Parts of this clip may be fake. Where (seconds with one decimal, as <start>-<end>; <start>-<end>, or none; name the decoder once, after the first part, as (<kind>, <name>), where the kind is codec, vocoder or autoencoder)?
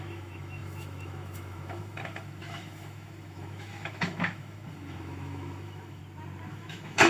0.0-6.0 (autoencoder, DAC-VAE); 6.5-7.1